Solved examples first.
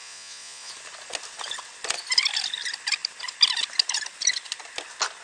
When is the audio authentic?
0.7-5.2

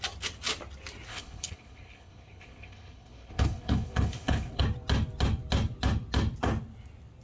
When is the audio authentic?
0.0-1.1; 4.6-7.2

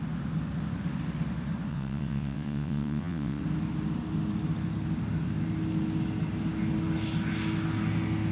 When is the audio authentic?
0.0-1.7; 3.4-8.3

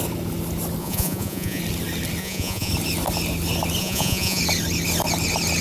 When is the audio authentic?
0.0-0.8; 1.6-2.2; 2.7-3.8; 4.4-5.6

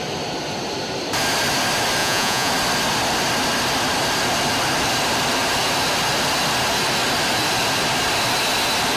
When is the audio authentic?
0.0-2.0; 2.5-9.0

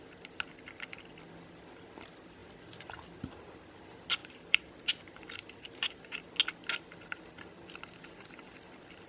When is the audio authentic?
0.0-4.2; 6.2-9.1

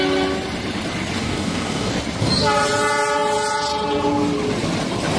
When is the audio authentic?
0.0-1.2; 1.9-5.2